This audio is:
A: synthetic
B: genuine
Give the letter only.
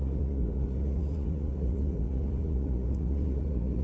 A